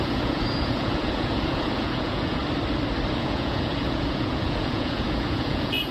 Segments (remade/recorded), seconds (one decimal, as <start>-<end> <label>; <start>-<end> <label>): 0.0-2.4 remade; 2.4-3.1 recorded; 3.1-5.9 remade